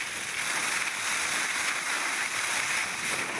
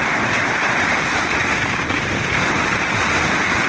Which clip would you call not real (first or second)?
second